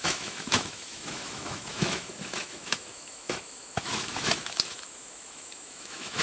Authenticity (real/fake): fake